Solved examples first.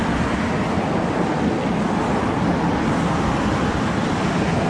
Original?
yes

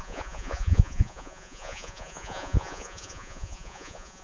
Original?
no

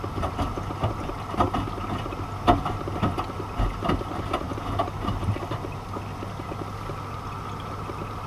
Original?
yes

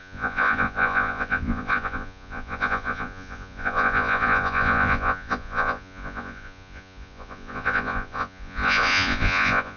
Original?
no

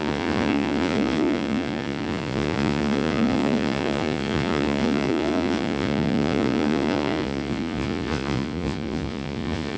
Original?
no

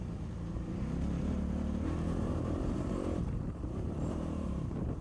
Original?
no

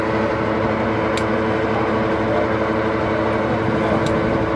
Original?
yes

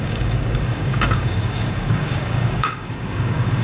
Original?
no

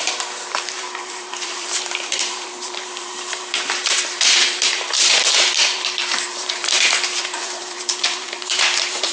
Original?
no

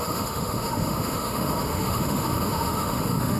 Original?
no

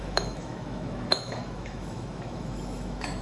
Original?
no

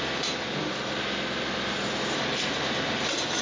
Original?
yes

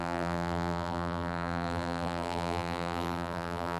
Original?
no